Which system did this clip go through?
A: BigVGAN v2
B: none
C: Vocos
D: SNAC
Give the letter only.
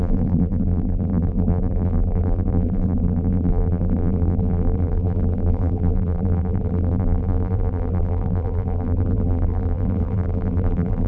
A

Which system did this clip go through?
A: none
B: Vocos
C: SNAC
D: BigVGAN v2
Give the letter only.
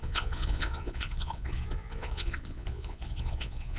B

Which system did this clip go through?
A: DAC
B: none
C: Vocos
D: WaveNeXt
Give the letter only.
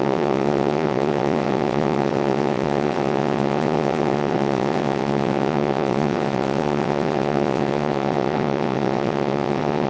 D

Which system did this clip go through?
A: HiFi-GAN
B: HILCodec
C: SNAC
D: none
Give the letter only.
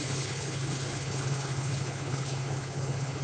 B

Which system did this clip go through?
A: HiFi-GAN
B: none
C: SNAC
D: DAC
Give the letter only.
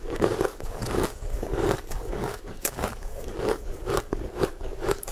D